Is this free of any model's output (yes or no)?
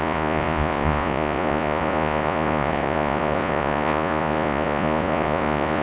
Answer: no